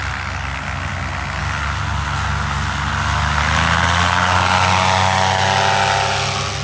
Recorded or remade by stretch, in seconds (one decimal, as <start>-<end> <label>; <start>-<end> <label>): 0.0-6.6 recorded